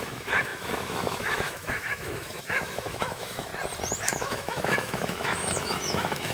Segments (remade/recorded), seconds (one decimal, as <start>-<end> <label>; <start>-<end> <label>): 0.0-3.5 remade; 3.5-4.0 recorded; 4.0-6.3 remade

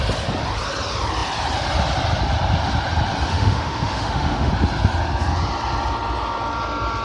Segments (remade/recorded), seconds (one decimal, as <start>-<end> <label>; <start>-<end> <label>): 0.0-3.3 recorded; 3.3-4.5 remade; 4.5-7.0 recorded

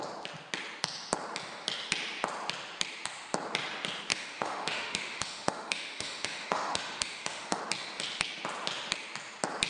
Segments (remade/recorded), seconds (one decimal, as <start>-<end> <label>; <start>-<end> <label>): 0.0-4.1 recorded; 4.1-7.6 remade; 7.6-9.7 recorded

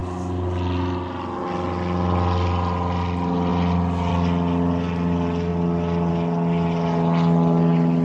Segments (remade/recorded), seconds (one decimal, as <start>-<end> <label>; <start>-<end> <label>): 0.0-8.0 recorded

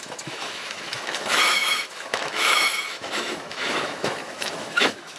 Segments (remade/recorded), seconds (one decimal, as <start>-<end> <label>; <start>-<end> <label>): 0.0-5.2 remade

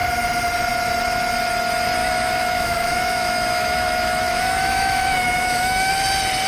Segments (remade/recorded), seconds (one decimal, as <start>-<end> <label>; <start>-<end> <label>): 0.0-2.0 recorded; 2.0-5.9 remade; 5.9-6.5 recorded

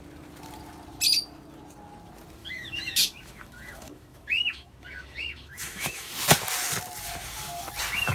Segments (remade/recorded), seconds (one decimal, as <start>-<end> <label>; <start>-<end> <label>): 0.0-2.4 recorded; 2.4-6.1 remade; 6.1-8.1 recorded

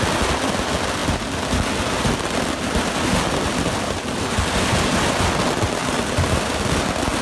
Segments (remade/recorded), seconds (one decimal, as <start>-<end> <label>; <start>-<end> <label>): 0.0-7.2 recorded